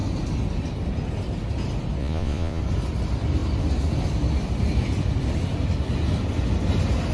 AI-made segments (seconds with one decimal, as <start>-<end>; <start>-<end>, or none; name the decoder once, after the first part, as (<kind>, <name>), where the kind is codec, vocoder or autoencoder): 2.0-2.6 (vocoder, Vocos)